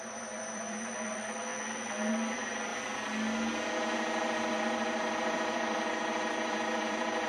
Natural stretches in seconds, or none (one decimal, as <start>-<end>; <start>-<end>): 1.5-2.1; 2.7-4.5